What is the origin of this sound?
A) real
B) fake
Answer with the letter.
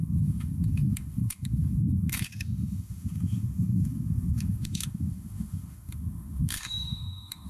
B